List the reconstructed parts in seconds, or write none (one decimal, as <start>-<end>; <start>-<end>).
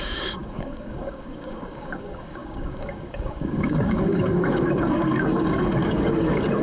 0.0-6.6